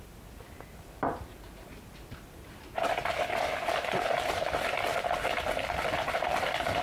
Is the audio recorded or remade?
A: remade